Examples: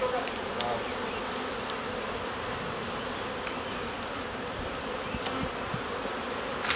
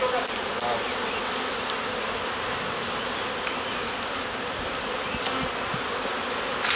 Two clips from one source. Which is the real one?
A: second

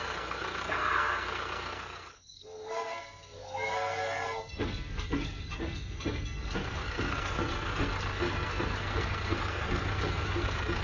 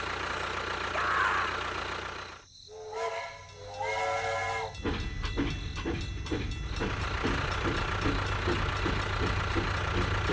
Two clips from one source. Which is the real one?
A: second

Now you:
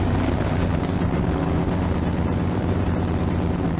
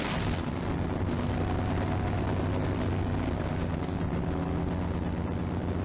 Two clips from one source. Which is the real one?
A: second